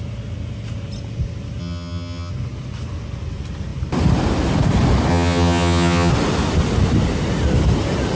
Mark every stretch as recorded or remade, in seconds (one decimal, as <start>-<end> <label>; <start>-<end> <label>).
0.0-1.6 recorded; 1.6-2.3 remade; 2.3-5.1 recorded; 5.1-6.1 remade; 6.1-8.2 recorded